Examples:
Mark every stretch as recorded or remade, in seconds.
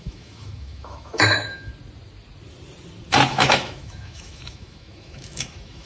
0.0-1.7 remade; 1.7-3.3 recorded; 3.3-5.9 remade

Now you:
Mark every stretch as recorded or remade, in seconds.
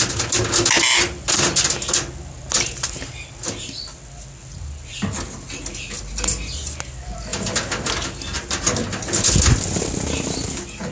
0.0-10.9 recorded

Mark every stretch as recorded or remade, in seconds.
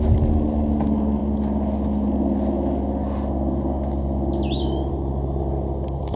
0.0-6.2 recorded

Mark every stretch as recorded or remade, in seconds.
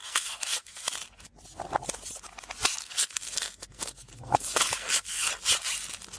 0.0-0.8 remade; 0.8-2.8 recorded; 2.8-5.3 remade; 5.3-6.2 recorded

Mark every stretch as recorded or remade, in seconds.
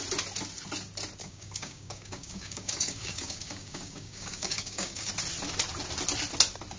0.0-1.2 recorded; 1.2-5.1 remade; 5.1-6.8 recorded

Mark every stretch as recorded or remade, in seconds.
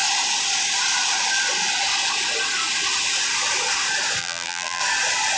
0.0-4.2 recorded; 4.2-4.8 remade; 4.8-5.4 recorded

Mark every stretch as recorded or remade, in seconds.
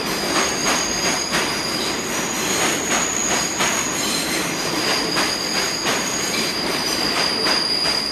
0.0-0.6 recorded; 0.6-1.1 remade; 1.1-5.8 recorded; 5.8-7.6 remade; 7.6-8.1 recorded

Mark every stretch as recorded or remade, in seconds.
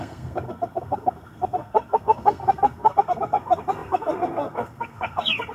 0.0-5.5 remade